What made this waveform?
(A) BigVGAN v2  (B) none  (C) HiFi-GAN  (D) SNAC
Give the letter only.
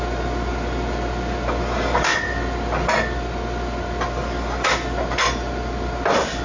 B